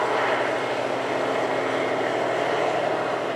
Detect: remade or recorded recorded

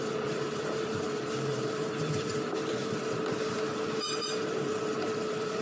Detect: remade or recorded remade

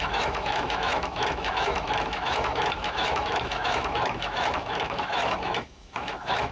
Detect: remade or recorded remade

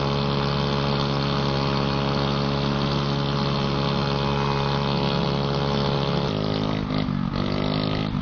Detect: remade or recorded recorded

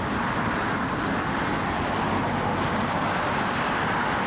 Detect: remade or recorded recorded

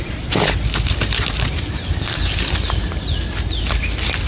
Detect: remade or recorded recorded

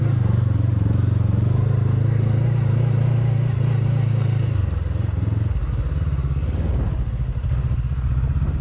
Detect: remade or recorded recorded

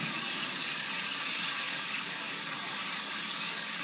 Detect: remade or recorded remade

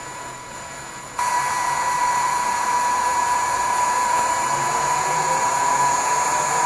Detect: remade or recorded remade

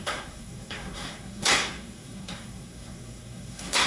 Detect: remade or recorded remade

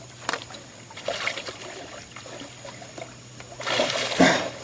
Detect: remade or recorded remade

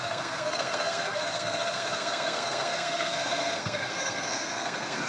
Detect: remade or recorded remade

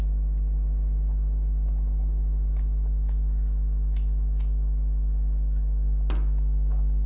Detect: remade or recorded recorded